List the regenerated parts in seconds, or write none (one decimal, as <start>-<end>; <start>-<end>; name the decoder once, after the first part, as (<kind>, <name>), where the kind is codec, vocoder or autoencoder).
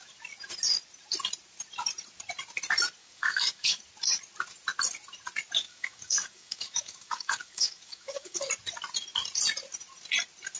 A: 3.0-3.8 (codec, DAC); 5.7-8.5